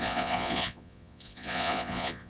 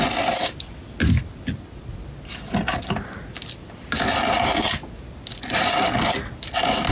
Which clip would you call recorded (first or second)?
second